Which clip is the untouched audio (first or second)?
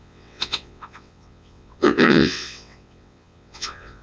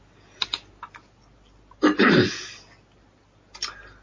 second